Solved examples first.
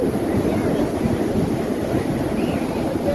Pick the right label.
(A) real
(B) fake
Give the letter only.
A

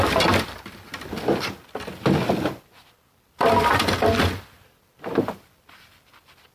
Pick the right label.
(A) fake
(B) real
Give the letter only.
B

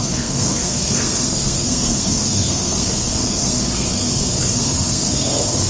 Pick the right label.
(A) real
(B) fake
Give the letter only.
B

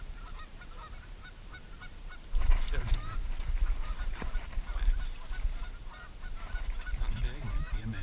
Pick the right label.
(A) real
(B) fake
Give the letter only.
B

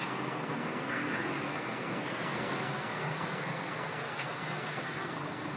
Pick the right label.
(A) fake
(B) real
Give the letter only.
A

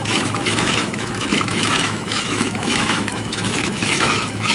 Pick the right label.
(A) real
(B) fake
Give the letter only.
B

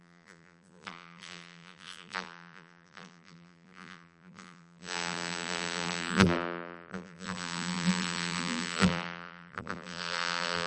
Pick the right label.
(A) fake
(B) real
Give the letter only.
A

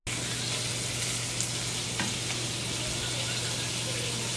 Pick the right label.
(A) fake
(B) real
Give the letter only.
B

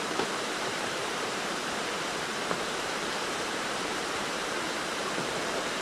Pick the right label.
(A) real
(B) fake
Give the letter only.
B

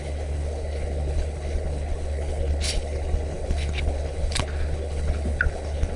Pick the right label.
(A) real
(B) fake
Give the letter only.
B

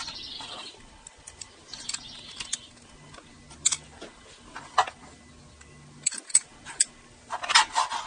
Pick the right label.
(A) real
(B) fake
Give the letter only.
A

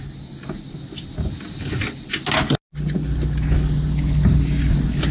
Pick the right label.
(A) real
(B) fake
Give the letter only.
A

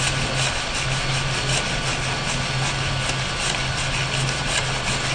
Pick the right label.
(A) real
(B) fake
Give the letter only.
A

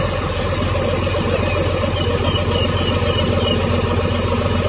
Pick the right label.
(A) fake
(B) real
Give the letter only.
B